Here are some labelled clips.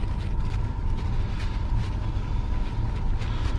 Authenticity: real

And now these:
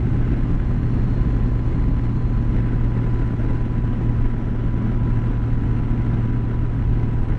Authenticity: real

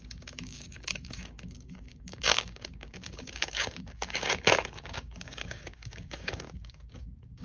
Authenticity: fake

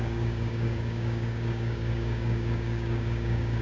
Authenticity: fake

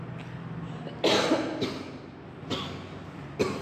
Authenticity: real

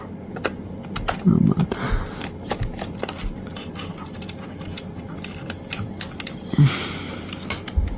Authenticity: real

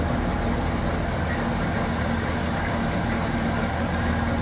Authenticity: real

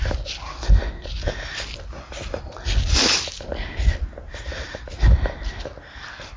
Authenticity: real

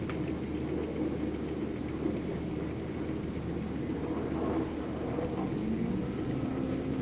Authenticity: real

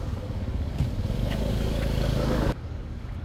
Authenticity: fake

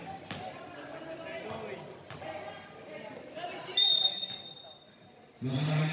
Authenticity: real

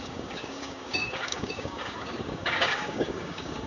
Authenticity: fake